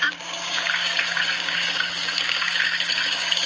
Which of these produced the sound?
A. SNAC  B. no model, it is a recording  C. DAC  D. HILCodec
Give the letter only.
C